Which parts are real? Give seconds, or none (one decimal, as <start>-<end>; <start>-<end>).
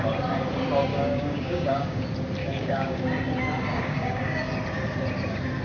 0.0-0.9; 2.0-2.4; 3.0-3.7; 4.5-5.6